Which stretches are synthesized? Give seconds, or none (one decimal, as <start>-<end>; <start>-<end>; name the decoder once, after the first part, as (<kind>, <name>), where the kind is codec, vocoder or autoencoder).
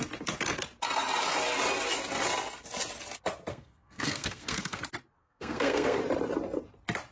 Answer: 3.5-4.8 (codec, SNAC); 5.2-6.0